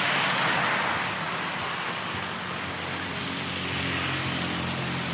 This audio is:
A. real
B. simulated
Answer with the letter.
A